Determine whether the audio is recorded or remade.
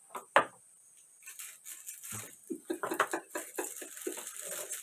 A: recorded